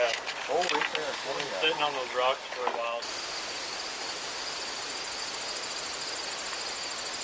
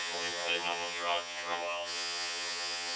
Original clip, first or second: first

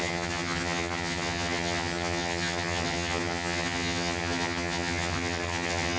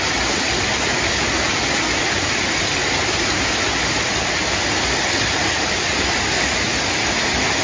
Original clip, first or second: second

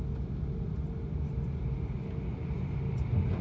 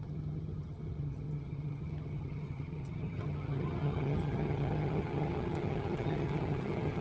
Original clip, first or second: first